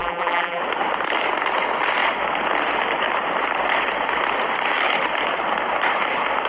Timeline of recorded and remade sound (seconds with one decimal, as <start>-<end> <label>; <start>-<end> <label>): 0.0-0.6 remade; 0.6-6.5 recorded